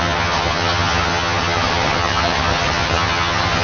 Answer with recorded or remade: remade